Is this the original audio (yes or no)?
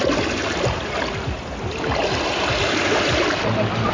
yes